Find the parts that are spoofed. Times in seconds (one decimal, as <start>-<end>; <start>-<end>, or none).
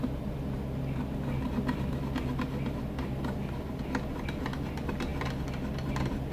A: none